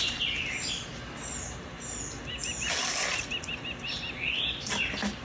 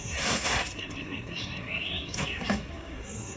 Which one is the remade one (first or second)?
second